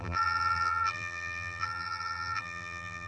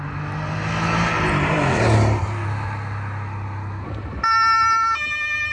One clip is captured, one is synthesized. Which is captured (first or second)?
second